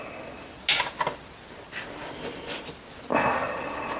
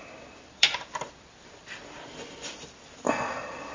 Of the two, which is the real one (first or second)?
first